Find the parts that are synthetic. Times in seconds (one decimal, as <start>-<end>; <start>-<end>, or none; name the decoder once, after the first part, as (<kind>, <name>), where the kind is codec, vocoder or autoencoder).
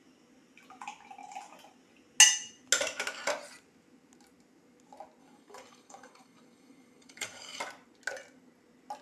5.2-7.6 (codec, DAC)